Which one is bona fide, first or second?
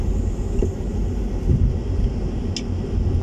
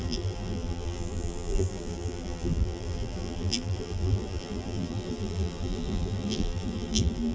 first